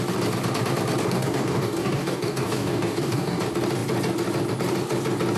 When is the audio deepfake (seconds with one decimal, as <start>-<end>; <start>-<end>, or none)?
1.0-3.4